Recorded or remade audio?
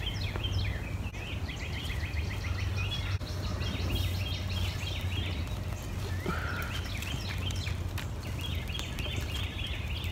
recorded